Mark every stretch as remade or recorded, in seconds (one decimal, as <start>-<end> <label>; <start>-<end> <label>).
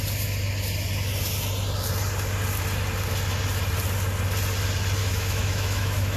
0.0-5.0 recorded; 5.0-6.2 remade